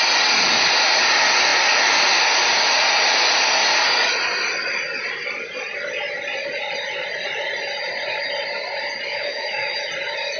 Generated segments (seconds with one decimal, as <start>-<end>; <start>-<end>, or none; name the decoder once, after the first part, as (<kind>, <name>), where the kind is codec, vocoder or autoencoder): 9.1-9.9 (autoencoder, DAC-VAE)